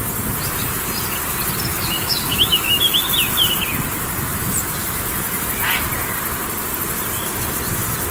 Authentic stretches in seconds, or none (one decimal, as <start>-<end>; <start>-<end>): 0.0-1.7; 2.8-8.1

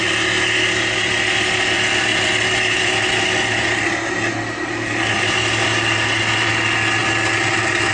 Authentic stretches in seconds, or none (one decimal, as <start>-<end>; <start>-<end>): 0.0-7.9

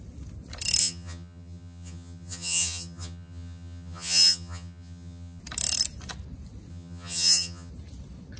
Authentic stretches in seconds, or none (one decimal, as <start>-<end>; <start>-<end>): 0.0-0.8; 5.4-6.7; 7.7-8.4

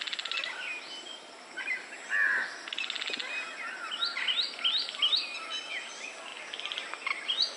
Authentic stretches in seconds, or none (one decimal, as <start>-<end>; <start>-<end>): 0.0-7.6

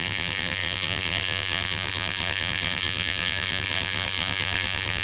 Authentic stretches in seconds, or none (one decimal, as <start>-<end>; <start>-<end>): none

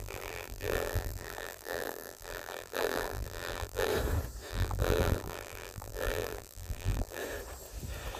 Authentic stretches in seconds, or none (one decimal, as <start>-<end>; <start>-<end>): 3.9-4.5; 7.2-8.2

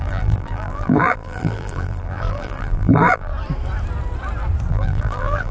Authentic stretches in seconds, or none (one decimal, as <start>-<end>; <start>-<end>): 3.3-4.7